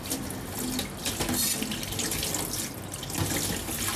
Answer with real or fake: real